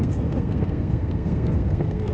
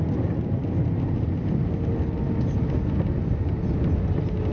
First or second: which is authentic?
second